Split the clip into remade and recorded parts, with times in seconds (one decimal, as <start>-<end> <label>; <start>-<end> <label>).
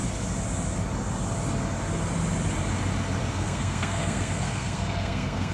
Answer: 0.0-3.3 recorded; 3.3-5.5 remade